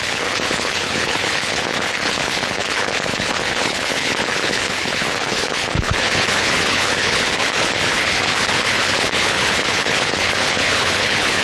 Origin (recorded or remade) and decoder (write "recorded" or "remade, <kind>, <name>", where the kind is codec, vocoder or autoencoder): remade, codec, HILCodec